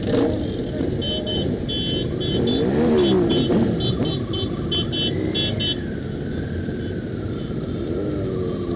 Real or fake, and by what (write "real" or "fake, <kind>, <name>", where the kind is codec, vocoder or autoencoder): real